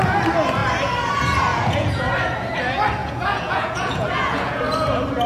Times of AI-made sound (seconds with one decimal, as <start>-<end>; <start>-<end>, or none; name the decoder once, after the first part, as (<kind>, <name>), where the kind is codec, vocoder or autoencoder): 1.5-2.1 (vocoder, Vocos); 3.0-4.6